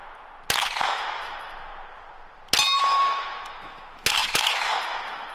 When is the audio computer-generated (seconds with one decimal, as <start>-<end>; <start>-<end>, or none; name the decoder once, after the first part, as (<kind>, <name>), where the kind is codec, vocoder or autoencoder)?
0.8-1.7 (autoencoder, DAC-VAE); 2.8-5.3